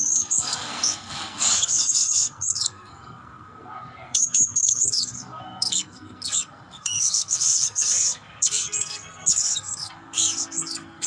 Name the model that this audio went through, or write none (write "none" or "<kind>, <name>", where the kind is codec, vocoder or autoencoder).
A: codec, SNAC